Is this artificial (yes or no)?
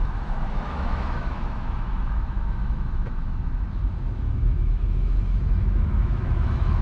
yes